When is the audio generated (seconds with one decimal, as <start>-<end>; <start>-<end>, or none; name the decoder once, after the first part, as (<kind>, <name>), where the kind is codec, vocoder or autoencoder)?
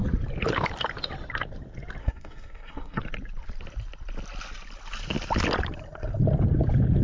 2.0-3.0 (codec, SNAC)